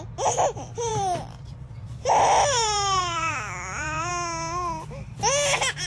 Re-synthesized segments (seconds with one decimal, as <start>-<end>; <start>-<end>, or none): 0.9-4.1